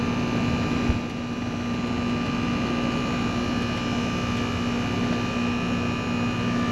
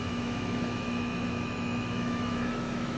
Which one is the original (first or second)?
first